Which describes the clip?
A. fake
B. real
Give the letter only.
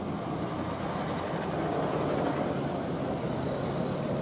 B